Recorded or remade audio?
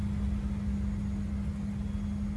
recorded